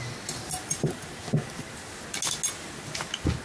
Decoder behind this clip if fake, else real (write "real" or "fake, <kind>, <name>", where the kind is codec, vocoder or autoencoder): real